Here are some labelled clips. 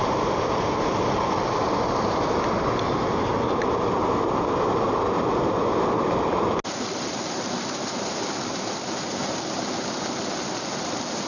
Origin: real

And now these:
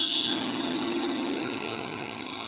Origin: fake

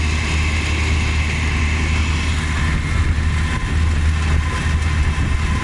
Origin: real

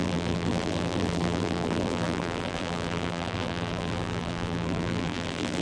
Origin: fake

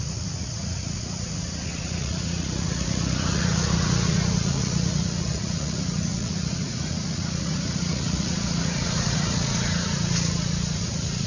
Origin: fake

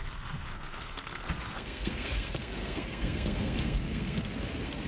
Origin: fake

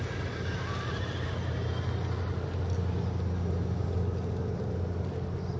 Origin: real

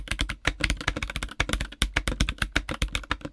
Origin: real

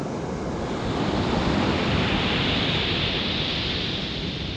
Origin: real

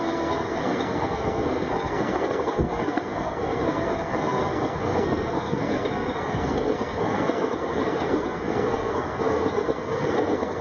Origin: fake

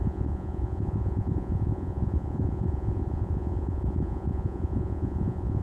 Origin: fake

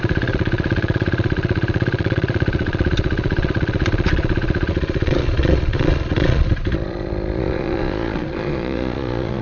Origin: fake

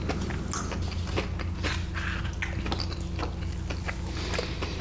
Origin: real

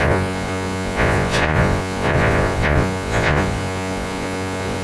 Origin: fake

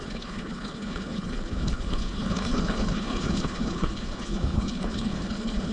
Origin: fake